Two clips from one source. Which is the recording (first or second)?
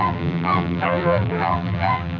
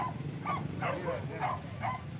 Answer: second